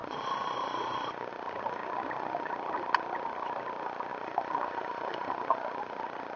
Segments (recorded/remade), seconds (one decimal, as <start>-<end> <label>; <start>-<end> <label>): 0.0-1.3 remade; 1.3-1.8 recorded; 1.8-2.5 remade; 2.5-4.1 recorded; 4.1-5.8 remade; 5.8-6.4 recorded